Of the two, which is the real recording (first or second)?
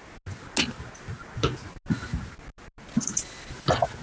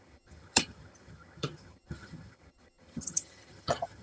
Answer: first